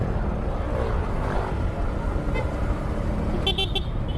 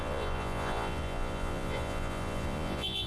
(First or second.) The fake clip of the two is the second